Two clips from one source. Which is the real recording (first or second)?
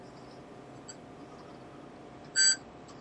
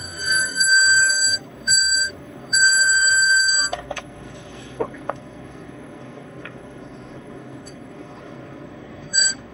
first